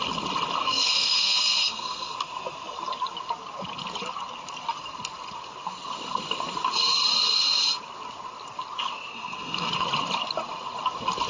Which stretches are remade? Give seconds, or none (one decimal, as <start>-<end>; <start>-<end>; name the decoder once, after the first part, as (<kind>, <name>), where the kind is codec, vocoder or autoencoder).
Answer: 0.6-2.1 (codec, SNAC); 9.1-9.7